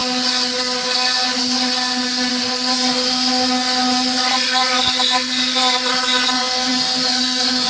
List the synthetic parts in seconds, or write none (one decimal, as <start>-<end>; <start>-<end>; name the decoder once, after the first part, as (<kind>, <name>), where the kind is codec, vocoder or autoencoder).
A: none